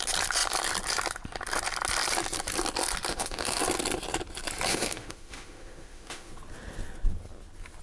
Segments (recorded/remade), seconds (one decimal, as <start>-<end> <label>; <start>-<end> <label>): 0.0-3.1 recorded; 3.1-3.6 remade; 3.6-4.7 recorded; 4.7-6.3 remade; 6.3-7.8 recorded